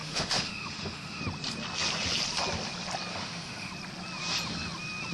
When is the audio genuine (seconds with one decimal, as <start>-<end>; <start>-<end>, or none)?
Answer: 1.2-3.1; 3.7-5.1